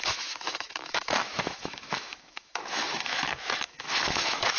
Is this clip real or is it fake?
fake